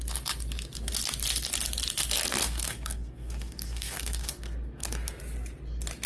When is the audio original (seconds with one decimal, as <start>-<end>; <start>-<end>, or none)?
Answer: 0.0-2.4; 5.2-6.1